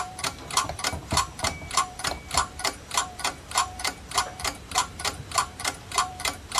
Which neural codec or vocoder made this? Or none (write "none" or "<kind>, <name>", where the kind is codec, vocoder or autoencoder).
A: vocoder, BigVGAN v2